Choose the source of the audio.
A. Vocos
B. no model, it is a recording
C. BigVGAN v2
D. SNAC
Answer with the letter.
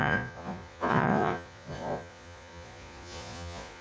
A